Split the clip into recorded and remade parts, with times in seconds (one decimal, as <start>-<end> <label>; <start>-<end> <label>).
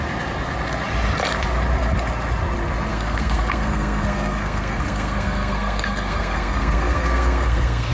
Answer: 0.0-2.9 recorded; 2.9-7.9 remade